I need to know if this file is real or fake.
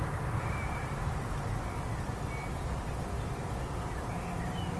real